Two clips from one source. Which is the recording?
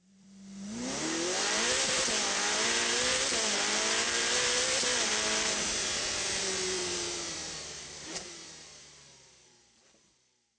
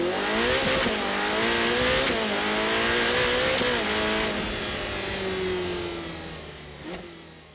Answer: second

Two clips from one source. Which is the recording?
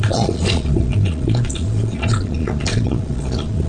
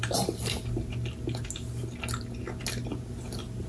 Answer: second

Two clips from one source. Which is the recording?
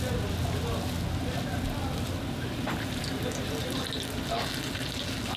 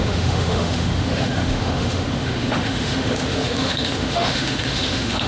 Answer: first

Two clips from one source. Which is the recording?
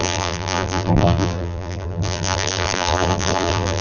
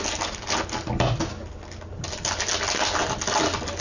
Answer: second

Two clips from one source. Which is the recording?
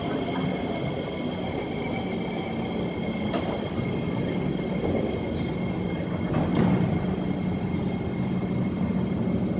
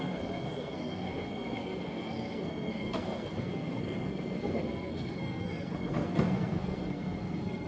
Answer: first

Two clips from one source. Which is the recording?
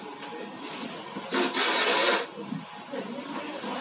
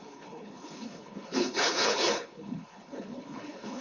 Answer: first